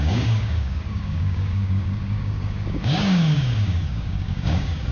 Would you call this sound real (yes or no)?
no